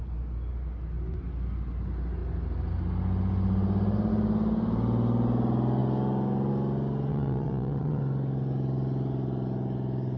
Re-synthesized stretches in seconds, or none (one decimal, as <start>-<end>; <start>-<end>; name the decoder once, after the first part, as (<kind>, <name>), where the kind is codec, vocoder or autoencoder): 7.1-8.0 (vocoder, WaveNeXt)